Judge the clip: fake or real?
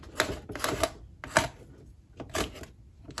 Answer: real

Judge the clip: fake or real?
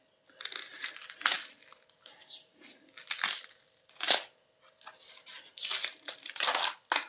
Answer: real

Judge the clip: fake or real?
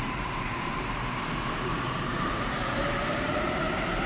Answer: fake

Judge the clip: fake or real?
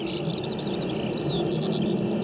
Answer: real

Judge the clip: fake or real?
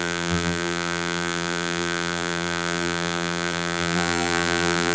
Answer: fake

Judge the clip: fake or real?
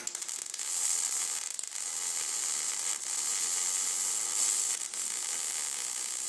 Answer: real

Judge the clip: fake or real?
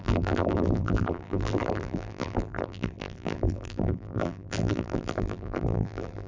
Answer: fake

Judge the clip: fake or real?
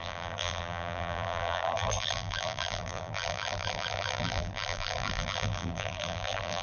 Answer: fake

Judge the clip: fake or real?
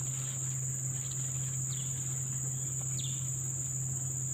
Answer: real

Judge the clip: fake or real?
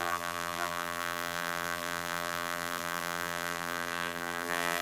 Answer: fake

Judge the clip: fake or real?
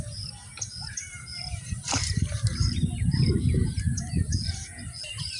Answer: fake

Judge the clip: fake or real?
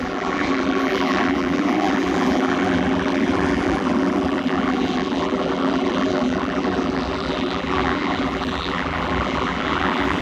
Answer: fake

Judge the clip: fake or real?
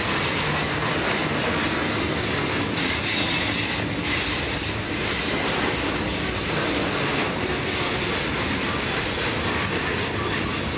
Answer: real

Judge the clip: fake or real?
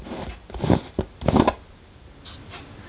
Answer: real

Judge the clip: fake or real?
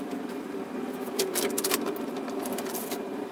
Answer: fake